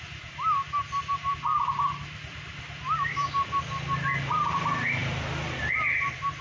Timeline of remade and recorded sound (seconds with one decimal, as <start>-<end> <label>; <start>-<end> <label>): 0.0-6.4 recorded